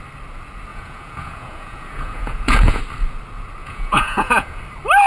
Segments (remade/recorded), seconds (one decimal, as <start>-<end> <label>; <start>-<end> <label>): 0.0-0.7 recorded; 0.7-2.8 remade; 2.8-3.6 recorded; 3.6-4.6 remade; 4.6-5.1 recorded